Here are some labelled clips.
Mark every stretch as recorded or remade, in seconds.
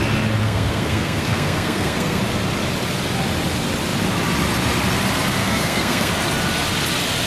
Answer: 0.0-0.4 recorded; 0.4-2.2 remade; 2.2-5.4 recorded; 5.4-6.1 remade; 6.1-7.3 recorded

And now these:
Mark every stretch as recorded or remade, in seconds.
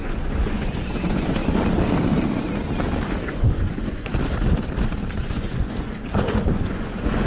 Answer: 0.0-1.4 remade; 1.4-3.2 recorded; 3.2-4.1 remade; 4.1-5.2 recorded; 5.2-7.3 remade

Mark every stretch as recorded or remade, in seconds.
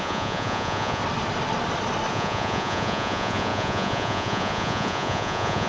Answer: 0.0-1.0 remade; 1.0-2.1 recorded; 2.1-5.7 remade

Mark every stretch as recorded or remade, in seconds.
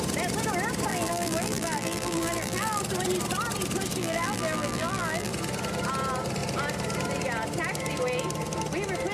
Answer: 0.0-0.9 recorded; 0.9-2.8 remade; 2.8-4.0 recorded; 4.0-5.3 remade; 5.3-9.1 recorded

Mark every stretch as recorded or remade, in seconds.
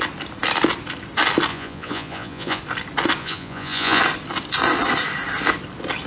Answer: 0.0-1.5 recorded; 1.5-2.6 remade; 2.6-3.2 recorded; 3.2-4.0 remade; 4.0-6.1 recorded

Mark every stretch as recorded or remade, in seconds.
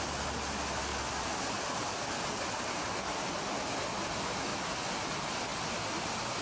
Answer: 0.0-6.4 recorded